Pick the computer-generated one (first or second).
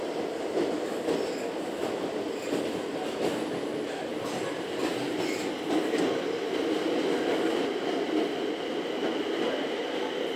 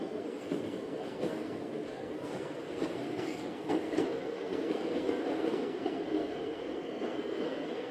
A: second